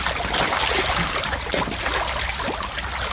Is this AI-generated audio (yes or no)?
no